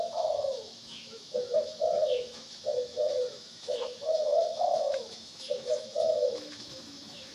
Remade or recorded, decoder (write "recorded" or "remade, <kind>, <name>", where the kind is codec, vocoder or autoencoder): remade, autoencoder, DAC-VAE